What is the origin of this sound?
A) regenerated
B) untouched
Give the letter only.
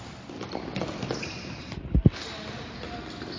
B